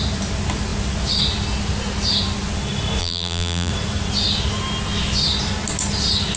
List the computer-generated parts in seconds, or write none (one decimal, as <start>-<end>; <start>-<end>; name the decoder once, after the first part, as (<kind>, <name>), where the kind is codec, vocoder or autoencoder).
3.0-3.7 (vocoder, BigVGAN v2)